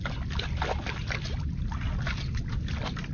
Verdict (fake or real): real